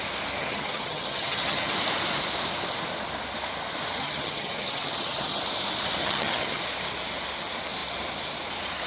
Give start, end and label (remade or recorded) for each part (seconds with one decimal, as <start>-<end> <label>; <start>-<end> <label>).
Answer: 0.0-0.4 recorded; 0.4-1.7 remade; 1.7-4.0 recorded; 4.0-5.4 remade; 5.4-6.0 recorded; 6.0-6.6 remade; 6.6-8.9 recorded